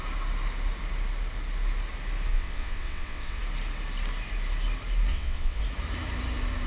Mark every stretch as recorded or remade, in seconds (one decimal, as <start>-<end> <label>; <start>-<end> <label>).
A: 0.0-2.3 recorded; 2.3-3.4 remade; 3.4-5.1 recorded; 5.1-5.6 remade; 5.6-6.7 recorded